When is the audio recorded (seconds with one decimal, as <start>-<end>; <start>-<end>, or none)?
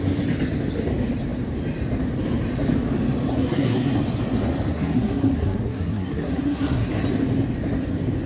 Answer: 0.0-3.3; 3.9-4.7; 6.9-8.3